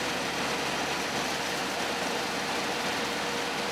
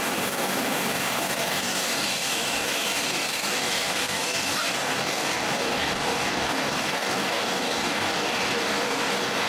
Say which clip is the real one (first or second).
first